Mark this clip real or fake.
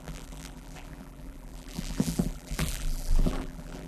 fake